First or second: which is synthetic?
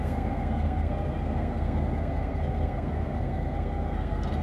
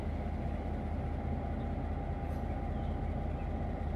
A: first